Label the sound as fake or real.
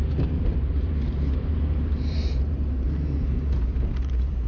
fake